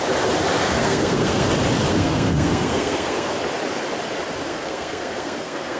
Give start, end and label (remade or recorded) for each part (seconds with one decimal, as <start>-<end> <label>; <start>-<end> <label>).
0.0-0.6 recorded; 0.6-1.5 remade; 1.5-1.9 recorded; 1.9-3.4 remade; 3.4-4.5 recorded; 4.5-5.8 remade